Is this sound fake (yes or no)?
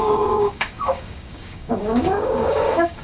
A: yes